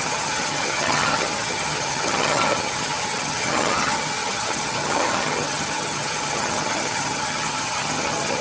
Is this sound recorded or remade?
remade